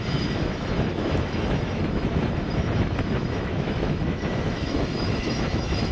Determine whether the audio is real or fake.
fake